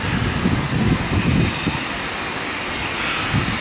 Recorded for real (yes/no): yes